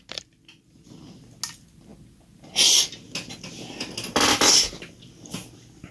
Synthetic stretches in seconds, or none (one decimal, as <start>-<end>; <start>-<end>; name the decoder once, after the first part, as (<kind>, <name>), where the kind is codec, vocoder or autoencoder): none